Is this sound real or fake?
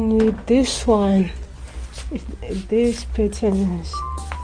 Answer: real